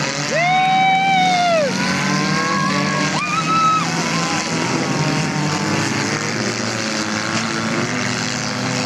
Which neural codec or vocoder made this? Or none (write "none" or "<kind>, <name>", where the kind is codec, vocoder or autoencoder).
none